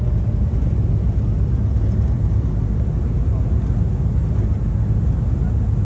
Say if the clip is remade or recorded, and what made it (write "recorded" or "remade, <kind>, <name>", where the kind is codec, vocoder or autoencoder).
recorded